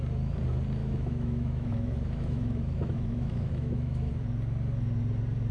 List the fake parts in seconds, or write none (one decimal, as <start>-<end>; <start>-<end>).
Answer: 0.8-4.1